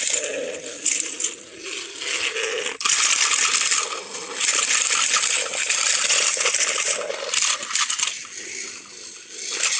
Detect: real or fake real